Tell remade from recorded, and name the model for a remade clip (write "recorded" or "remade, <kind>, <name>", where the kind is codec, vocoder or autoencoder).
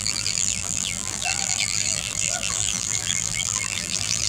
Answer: remade, vocoder, BigVGAN v2